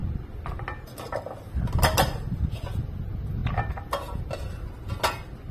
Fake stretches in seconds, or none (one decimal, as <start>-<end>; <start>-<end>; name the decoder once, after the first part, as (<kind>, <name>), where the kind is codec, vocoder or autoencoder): none